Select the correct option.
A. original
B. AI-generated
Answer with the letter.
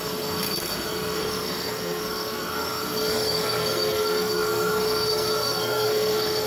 B